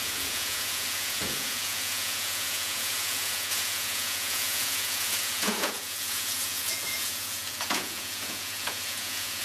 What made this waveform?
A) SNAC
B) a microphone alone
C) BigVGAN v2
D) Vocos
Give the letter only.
D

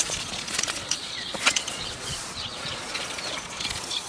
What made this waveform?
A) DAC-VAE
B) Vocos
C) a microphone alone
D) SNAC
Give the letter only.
B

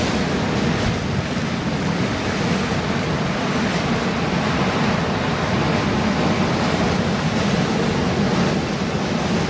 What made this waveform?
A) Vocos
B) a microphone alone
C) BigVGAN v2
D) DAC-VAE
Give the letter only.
B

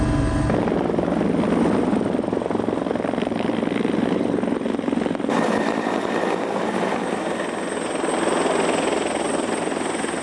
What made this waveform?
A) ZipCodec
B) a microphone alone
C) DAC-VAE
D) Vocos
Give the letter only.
B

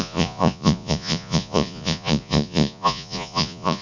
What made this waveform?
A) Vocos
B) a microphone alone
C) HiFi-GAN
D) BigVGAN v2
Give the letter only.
A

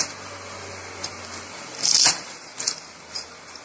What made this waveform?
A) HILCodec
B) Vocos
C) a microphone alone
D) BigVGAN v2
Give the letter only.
C